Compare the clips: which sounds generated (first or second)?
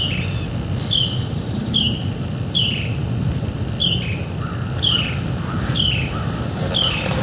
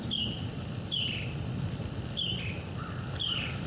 second